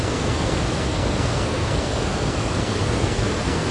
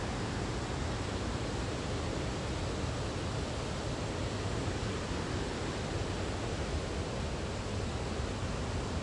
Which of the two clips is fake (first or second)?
first